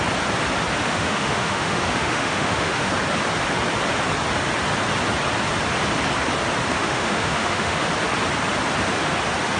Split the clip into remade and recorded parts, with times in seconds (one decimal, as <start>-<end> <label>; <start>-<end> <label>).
0.0-0.8 recorded; 0.8-2.9 remade; 2.9-6.7 recorded; 6.7-7.9 remade; 7.9-9.6 recorded